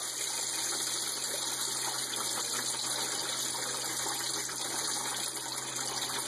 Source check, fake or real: real